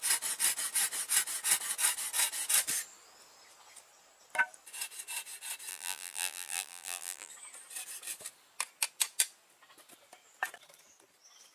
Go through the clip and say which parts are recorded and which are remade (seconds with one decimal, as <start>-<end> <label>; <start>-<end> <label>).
0.0-5.7 recorded; 5.7-7.3 remade; 7.3-11.5 recorded